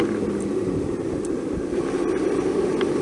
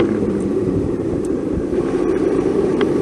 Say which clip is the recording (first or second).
first